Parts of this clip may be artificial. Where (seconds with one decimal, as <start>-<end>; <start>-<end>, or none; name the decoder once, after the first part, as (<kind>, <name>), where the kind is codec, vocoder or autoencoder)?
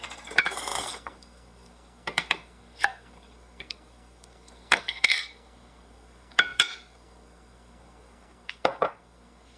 0.0-9.6 (codec, SNAC)